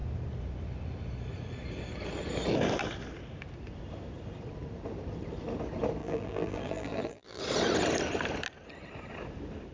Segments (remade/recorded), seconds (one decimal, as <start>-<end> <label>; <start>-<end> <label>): 0.0-6.0 recorded; 6.0-7.4 remade; 7.4-9.7 recorded